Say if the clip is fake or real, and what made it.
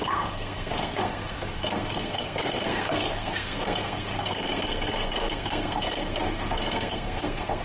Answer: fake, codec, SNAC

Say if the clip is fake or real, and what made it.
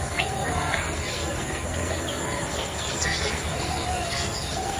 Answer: fake, codec, SNAC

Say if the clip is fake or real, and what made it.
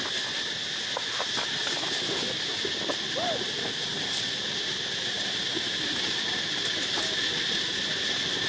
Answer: real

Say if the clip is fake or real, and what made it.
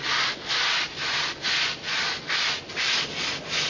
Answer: real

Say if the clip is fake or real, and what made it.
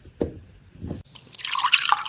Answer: real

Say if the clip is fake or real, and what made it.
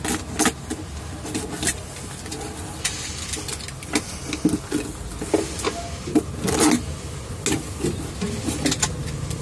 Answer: real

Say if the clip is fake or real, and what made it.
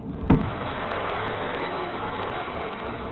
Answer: fake, codec, SNAC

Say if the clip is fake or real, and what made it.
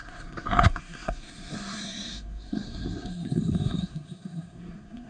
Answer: fake, codec, SNAC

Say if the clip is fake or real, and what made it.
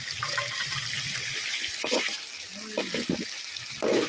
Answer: real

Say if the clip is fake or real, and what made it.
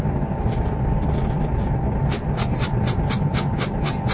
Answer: real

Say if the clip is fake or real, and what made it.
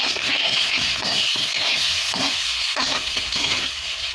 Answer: fake, codec, SNAC